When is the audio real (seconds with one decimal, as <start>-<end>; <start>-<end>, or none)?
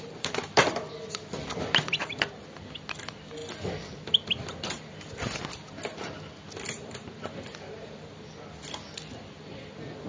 0.0-10.1